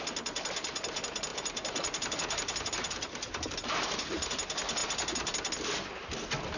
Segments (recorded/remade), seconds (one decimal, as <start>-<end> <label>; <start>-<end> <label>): 0.0-1.3 recorded; 1.3-4.3 remade; 4.3-6.6 recorded